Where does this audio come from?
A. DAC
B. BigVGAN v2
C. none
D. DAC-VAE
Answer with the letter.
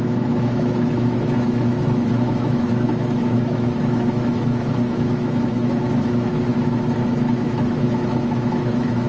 D